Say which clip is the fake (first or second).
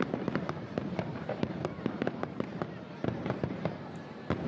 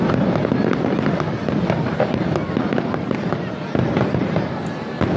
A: first